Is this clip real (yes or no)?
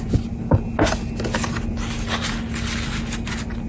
yes